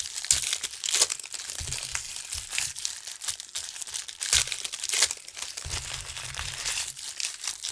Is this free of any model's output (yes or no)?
yes